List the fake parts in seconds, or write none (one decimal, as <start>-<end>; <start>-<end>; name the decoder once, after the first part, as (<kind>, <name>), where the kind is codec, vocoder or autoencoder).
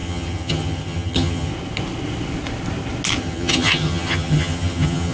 0.0-1.5 (vocoder, HiFi-GAN); 3.2-5.1